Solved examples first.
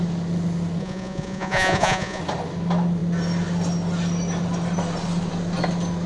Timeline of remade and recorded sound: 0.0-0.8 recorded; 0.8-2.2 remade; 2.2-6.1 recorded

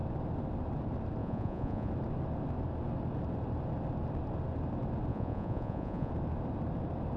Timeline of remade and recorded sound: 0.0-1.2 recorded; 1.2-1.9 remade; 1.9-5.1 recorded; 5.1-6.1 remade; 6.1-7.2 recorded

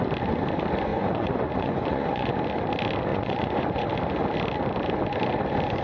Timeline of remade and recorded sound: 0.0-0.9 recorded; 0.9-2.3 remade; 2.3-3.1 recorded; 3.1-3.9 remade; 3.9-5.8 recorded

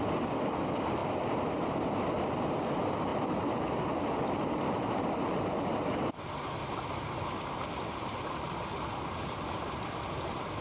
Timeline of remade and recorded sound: 0.0-10.6 recorded